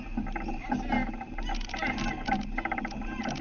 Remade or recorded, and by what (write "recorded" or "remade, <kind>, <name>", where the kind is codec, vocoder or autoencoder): recorded